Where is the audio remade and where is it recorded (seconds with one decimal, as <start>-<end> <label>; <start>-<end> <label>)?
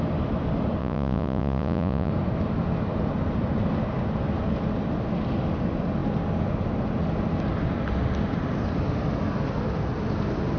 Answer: 0.0-0.8 recorded; 0.8-2.1 remade; 2.1-10.6 recorded